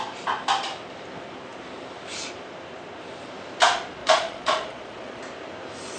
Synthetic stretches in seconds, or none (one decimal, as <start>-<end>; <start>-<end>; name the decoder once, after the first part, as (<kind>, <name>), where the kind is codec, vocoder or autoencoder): 4.0-5.2 (vocoder, Vocos)